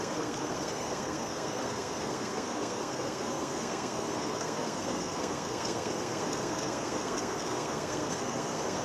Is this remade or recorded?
remade